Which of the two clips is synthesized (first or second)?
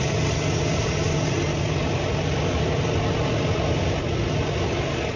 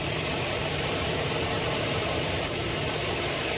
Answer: second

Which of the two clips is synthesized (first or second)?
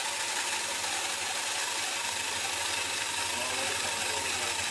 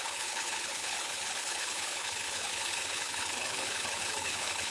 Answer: second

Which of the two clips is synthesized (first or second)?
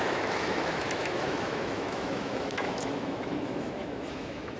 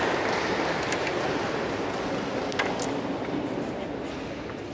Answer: first